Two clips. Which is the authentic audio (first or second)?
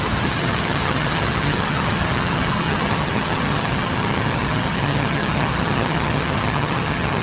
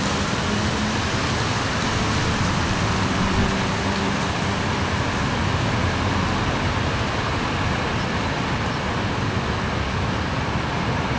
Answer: second